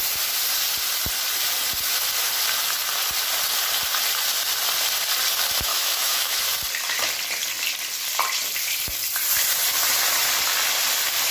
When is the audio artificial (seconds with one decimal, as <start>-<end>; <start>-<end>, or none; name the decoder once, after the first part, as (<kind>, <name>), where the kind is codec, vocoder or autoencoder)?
5.7-6.4 (autoencoder, DAC-VAE)